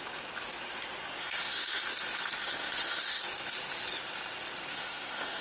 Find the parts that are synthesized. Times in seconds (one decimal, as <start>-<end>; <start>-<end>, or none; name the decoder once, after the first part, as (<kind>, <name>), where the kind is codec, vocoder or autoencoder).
1.2-1.8 (codec, SNAC); 2.4-3.2; 4.7-5.4